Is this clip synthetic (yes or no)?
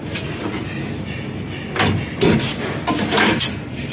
no